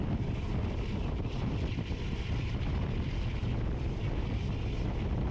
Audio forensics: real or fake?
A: real